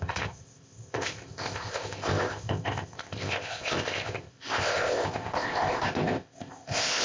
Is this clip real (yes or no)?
no